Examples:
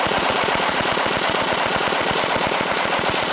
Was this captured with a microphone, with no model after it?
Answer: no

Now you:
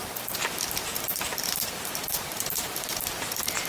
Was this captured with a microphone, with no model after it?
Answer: no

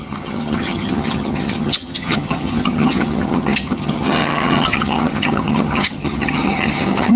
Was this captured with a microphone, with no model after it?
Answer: no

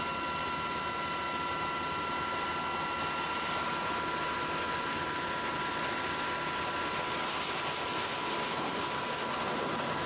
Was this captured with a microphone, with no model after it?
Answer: yes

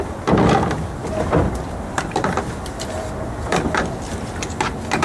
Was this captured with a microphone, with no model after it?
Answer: yes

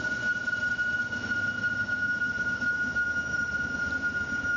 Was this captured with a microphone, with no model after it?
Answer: yes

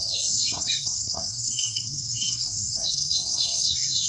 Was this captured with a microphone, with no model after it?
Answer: no